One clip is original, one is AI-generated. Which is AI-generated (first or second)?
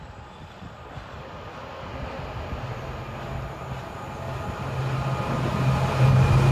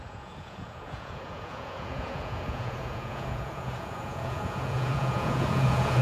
second